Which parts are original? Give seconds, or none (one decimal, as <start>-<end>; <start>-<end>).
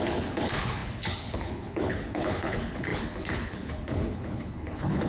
none